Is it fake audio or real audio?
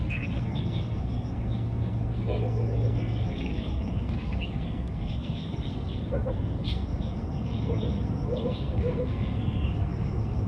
fake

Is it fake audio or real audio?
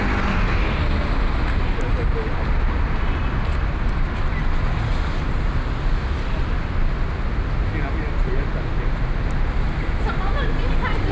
real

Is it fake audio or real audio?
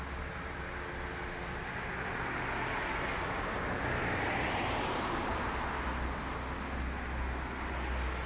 real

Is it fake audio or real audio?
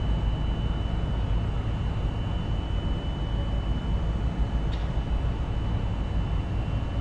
real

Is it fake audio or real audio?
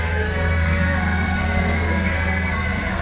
fake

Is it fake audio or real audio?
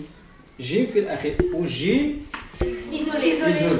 real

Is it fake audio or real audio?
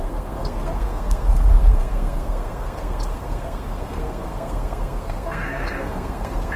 fake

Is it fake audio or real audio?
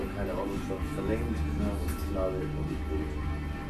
real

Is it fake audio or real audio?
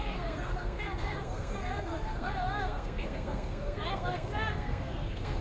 fake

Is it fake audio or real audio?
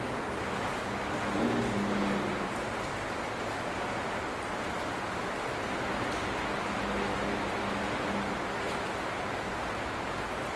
real